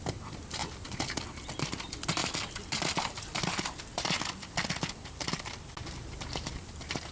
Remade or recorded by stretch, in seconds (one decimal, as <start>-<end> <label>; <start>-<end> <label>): 0.0-7.1 recorded